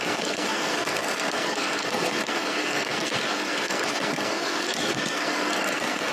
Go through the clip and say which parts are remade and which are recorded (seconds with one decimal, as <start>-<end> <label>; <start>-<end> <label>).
0.0-6.1 remade